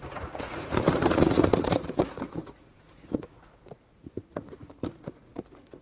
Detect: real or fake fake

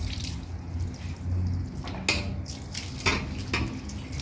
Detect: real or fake real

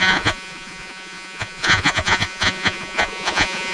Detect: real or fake fake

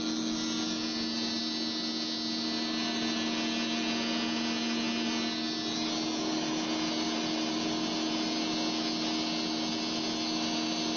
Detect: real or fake real